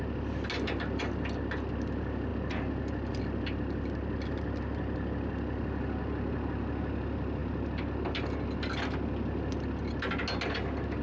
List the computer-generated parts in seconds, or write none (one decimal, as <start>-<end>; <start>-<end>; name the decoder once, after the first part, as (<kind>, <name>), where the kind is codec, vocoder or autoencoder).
none